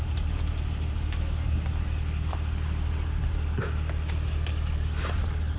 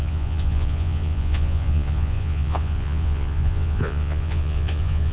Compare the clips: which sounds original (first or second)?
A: first